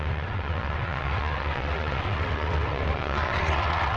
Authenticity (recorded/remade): remade